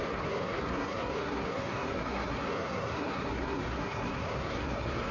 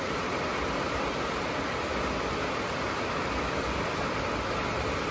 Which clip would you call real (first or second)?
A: second